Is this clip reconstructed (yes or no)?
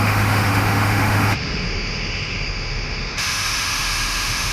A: yes